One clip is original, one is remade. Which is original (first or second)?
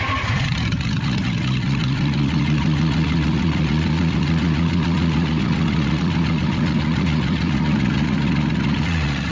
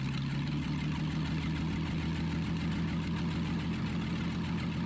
second